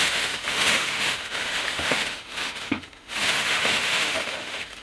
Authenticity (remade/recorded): remade